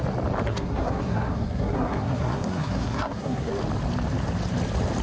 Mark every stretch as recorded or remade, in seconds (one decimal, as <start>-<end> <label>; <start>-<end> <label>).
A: 0.0-0.5 recorded; 0.5-3.5 remade; 3.5-5.0 recorded